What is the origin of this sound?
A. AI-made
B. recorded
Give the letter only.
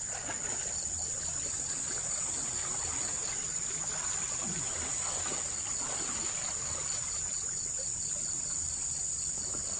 B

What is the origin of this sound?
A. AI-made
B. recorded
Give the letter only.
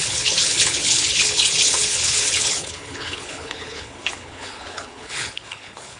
A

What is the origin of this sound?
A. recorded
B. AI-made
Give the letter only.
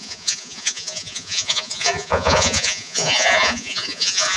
B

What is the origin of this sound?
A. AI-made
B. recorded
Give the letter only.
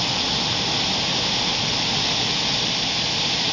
B